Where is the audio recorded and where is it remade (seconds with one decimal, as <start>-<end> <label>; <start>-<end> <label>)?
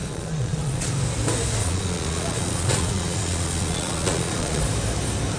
0.0-0.9 remade; 0.9-1.6 recorded; 1.6-4.6 remade; 4.6-5.4 recorded